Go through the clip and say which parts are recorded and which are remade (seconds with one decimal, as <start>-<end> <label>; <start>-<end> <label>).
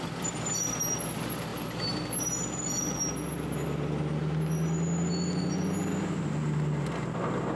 0.0-7.6 recorded